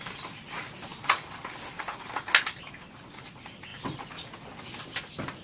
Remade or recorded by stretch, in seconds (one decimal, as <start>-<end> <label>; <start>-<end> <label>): 0.0-5.4 recorded